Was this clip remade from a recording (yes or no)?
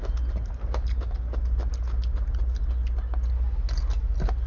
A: no